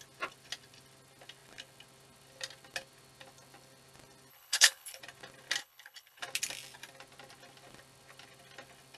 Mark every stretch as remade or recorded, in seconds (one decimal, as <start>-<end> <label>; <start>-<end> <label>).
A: 0.0-4.3 recorded; 4.3-5.0 remade; 5.0-5.6 recorded; 5.6-6.2 remade; 6.2-9.0 recorded

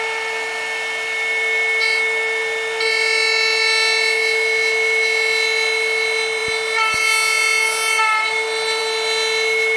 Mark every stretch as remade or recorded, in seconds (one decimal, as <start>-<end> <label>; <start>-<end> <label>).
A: 0.0-9.8 recorded